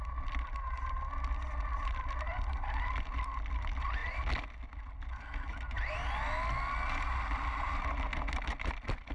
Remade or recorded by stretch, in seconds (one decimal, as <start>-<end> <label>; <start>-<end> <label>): 0.0-9.1 recorded